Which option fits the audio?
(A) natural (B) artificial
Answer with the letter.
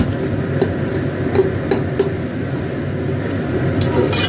A